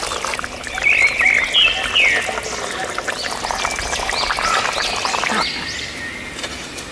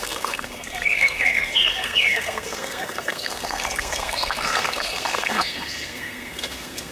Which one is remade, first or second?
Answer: second